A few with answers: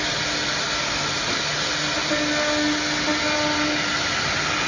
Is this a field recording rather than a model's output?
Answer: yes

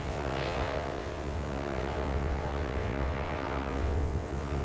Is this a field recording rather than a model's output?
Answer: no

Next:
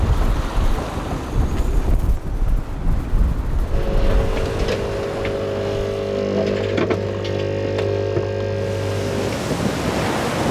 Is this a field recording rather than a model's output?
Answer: yes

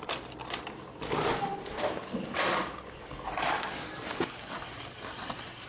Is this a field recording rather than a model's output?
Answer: yes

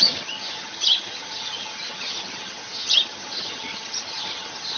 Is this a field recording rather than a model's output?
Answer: no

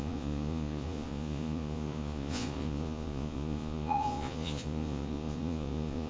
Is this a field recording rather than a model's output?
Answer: no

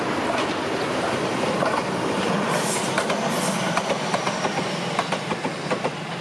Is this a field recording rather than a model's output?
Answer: yes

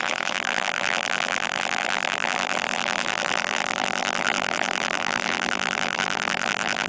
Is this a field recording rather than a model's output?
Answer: no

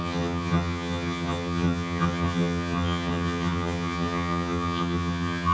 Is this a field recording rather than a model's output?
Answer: no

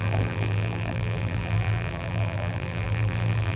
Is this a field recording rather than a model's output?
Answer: no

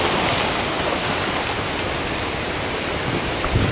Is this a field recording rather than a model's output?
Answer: yes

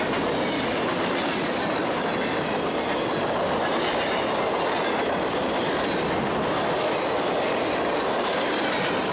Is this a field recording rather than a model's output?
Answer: yes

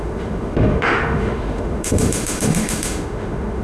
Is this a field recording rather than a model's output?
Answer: no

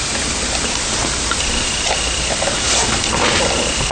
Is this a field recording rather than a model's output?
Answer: yes